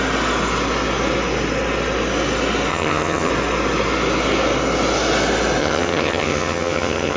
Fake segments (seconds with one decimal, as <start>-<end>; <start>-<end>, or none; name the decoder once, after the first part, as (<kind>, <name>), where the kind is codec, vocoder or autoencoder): 2.7-3.3 (vocoder, HiFi-GAN); 5.6-7.2